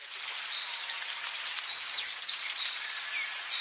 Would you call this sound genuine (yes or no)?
yes